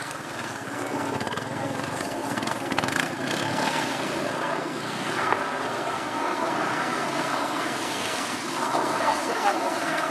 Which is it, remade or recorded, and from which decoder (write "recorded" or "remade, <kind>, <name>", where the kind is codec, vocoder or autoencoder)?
remade, codec, SNAC